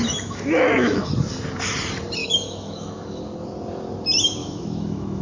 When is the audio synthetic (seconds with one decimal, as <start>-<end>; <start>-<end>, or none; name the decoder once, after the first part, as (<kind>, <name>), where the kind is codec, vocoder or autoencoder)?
0.0-1.1 (autoencoder, DAC-VAE); 2.2-3.2; 4.4-5.2